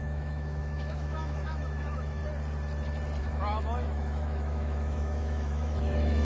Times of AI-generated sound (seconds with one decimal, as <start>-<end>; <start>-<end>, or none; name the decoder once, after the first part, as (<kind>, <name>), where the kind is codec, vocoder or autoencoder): 0.0-2.2 (autoencoder, DAC-VAE); 3.2-6.2